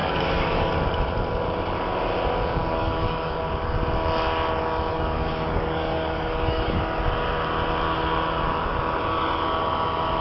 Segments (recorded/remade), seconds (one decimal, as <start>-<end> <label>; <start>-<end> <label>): 0.0-0.7 remade; 0.7-2.6 recorded; 2.6-3.4 remade; 3.4-4.9 recorded; 4.9-6.8 remade; 6.8-10.2 recorded